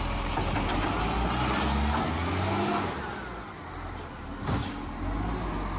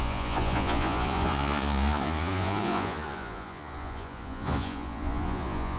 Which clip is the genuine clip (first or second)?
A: first